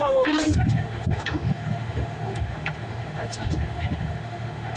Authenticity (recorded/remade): remade